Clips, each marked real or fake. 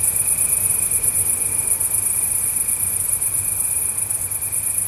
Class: real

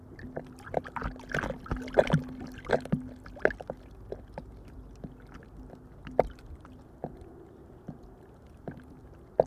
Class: real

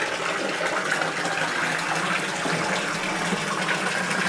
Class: real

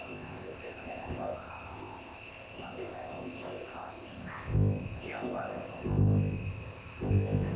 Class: fake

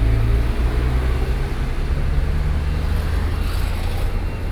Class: real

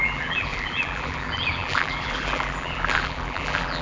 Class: fake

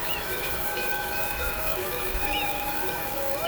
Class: fake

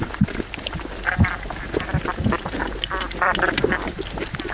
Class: real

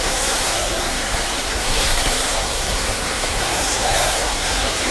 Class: fake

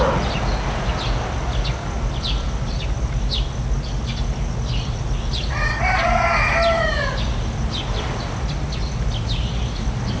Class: real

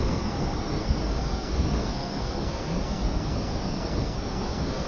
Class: fake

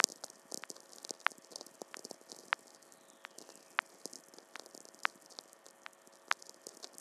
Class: real